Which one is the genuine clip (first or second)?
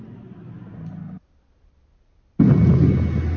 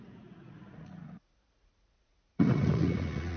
first